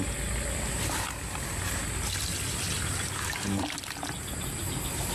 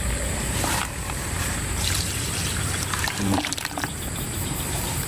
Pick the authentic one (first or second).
first